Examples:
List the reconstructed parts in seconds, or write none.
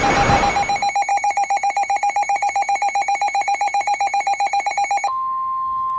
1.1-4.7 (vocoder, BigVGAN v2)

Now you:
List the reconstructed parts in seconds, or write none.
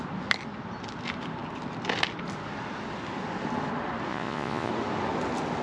4.1-4.7 (vocoder, Vocos)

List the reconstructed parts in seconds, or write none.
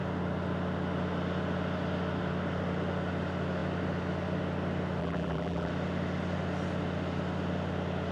5.0-5.7 (vocoder, BigVGAN v2)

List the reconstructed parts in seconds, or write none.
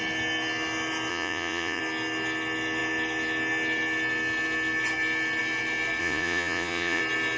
1.1-1.8 (vocoder, Vocos); 6.0-7.0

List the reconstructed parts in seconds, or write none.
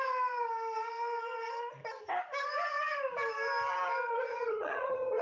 4.3-5.2 (vocoder, HiFi-GAN)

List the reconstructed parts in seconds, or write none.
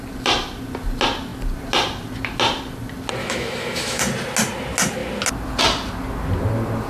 3.2-4.0 (autoencoder, DAC-VAE)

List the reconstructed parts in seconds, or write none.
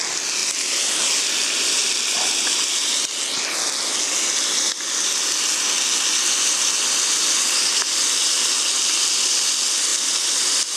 none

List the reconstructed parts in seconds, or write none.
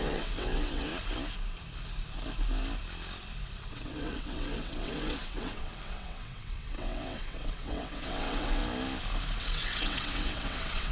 0.0-0.9 (vocoder, WaveNeXt); 3.7-8.6; 9.4-10.9